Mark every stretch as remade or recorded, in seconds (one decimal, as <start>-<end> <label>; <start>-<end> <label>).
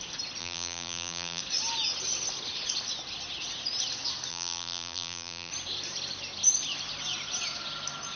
0.0-0.4 recorded; 0.4-1.4 remade; 1.4-4.3 recorded; 4.3-5.5 remade; 5.5-8.2 recorded